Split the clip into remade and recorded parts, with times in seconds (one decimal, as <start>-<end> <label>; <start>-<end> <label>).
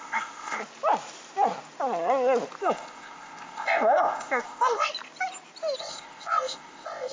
0.0-0.6 remade; 0.6-2.6 recorded; 2.6-4.9 remade; 4.9-5.8 recorded; 5.8-7.1 remade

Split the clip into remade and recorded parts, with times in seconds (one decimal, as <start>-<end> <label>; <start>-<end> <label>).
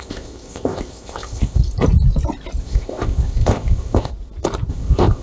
0.0-1.6 remade; 1.6-2.6 recorded; 2.6-4.1 remade; 4.1-4.7 recorded; 4.7-5.2 remade